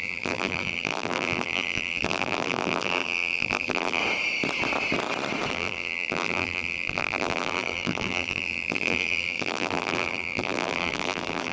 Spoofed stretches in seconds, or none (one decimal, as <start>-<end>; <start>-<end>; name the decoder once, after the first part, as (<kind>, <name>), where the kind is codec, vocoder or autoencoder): 0.0-4.0 (vocoder, BigVGAN v2); 5.5-11.5